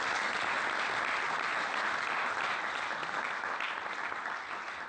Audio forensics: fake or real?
real